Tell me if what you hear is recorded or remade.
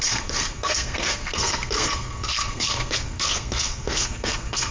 remade